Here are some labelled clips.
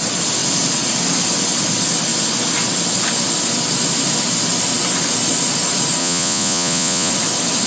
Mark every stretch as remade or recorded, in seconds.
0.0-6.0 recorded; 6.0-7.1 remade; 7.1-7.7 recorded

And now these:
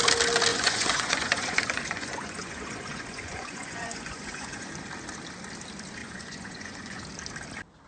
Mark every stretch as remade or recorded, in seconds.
0.0-0.5 recorded; 0.5-4.7 remade; 4.7-6.0 recorded; 6.0-7.0 remade; 7.0-7.9 recorded

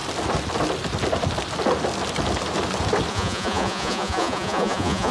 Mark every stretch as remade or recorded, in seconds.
0.0-3.1 recorded; 3.1-5.1 remade